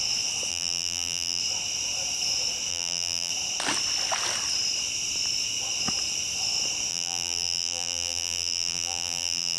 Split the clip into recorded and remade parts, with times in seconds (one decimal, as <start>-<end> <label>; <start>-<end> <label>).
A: 0.0-0.5 recorded; 0.5-1.4 remade; 1.4-2.7 recorded; 2.7-3.3 remade; 3.3-6.9 recorded; 6.9-9.6 remade